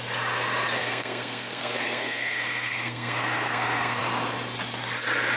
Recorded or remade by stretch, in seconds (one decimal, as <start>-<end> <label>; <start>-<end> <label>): 0.0-0.8 recorded; 0.8-4.0 remade; 4.0-5.4 recorded